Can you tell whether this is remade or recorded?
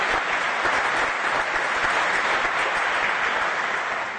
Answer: recorded